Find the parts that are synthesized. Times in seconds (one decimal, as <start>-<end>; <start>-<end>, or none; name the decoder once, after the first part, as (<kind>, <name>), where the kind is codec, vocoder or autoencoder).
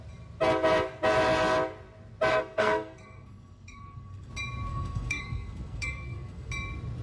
2.3-4.3 (codec, SNAC); 4.7-6.5